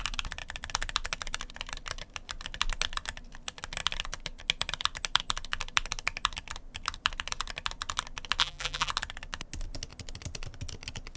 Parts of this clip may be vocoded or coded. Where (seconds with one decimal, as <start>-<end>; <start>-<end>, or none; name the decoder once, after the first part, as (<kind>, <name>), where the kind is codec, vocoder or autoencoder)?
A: 8.4-8.9 (vocoder, BigVGAN v2)